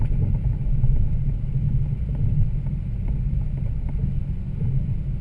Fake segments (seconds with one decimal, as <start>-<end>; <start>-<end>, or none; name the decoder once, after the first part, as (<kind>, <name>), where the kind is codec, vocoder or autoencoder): none